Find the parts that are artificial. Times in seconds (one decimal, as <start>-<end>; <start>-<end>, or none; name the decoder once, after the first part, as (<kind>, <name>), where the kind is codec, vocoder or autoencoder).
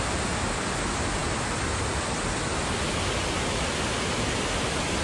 none